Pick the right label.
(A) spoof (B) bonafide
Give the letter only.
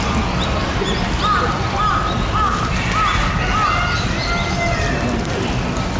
B